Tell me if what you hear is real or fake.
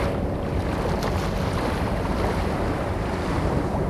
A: fake